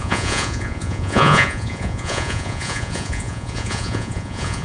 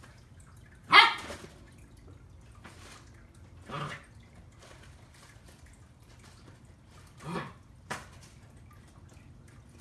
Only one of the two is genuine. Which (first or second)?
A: second